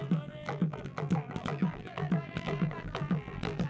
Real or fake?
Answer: fake